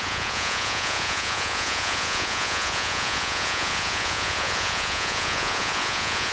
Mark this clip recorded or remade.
remade